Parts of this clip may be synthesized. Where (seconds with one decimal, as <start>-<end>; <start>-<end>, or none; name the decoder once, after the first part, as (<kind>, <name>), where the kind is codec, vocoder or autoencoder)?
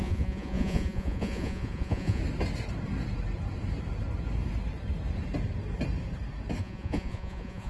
0.0-2.2 (vocoder, Vocos); 6.6-7.7